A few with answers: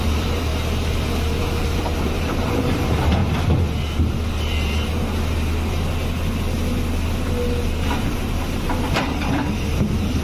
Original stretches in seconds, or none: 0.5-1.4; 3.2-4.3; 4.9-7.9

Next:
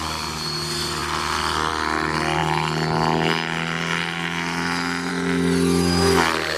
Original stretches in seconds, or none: 0.0-6.6

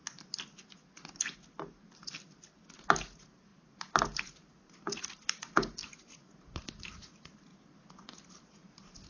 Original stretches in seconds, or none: 0.0-2.8; 7.5-8.3

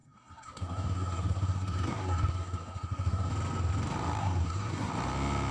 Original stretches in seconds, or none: 3.3-4.2; 4.9-5.5

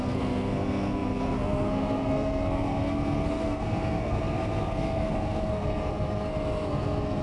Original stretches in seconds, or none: none